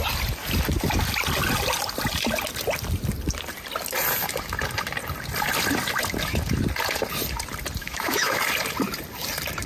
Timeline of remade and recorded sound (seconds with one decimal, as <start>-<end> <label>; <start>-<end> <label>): 0.0-7.8 recorded; 7.8-8.4 remade; 8.4-9.7 recorded